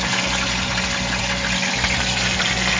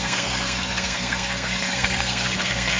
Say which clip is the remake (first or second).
second